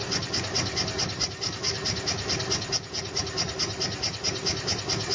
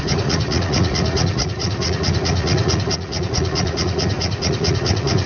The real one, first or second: first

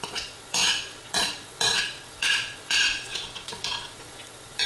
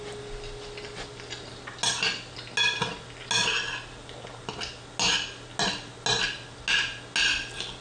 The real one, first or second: second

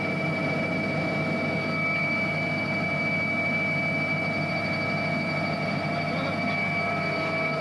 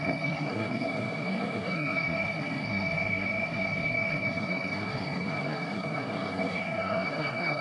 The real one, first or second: first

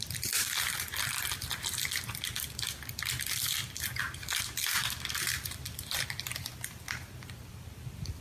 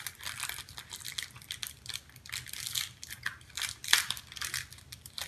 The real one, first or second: second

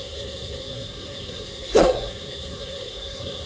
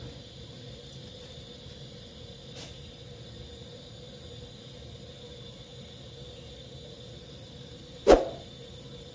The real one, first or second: second